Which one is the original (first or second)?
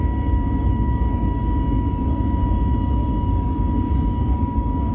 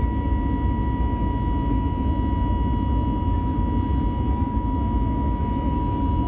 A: second